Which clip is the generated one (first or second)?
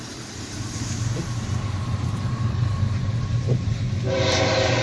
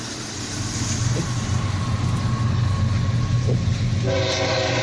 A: first